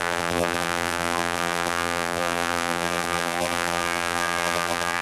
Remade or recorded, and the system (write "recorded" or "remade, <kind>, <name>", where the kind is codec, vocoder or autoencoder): remade, vocoder, BigVGAN v2